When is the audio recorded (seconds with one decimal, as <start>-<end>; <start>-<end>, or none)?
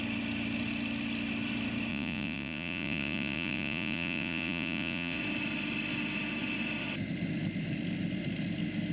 0.0-1.9; 5.2-8.9